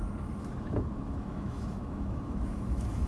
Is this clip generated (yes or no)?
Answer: yes